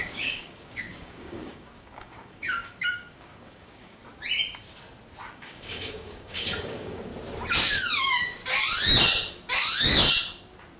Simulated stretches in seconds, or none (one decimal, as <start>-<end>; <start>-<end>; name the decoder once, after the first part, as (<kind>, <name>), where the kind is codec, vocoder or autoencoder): 0.0-4.0 (codec, DAC); 5.3-7.1; 8.0-8.4